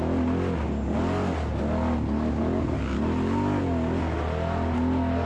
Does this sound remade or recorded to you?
recorded